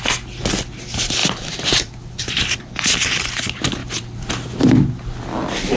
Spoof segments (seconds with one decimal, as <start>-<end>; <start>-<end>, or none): 1.2-2.6; 3.8-4.6